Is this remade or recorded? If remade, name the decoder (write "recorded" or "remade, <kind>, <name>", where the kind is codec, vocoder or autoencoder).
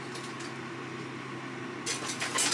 recorded